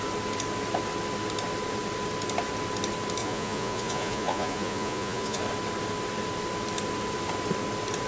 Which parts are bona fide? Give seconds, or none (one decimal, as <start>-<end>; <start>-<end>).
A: 0.0-3.2; 5.4-8.1